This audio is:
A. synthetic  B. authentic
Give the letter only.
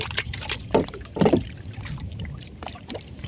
A